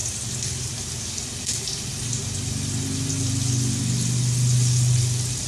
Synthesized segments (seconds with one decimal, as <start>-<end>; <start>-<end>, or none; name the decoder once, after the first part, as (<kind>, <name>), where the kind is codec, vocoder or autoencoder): none